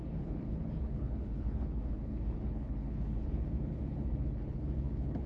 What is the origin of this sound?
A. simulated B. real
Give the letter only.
A